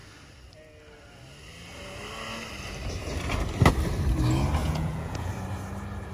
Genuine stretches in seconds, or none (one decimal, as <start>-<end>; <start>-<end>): 0.0-4.6; 5.3-6.1